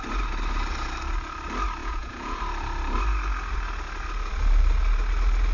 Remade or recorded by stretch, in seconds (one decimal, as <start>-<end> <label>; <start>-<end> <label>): 0.0-1.8 recorded; 1.8-2.4 remade; 2.4-5.5 recorded